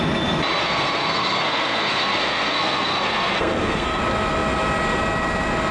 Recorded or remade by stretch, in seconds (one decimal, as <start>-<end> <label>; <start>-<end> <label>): 0.0-0.6 recorded; 0.6-4.0 remade; 4.0-5.7 recorded